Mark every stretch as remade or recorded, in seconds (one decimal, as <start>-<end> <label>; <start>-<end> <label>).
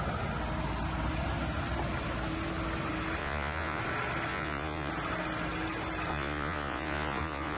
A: 0.0-3.2 recorded; 3.2-3.8 remade; 3.8-4.3 recorded; 4.3-4.9 remade; 4.9-6.1 recorded; 6.1-7.6 remade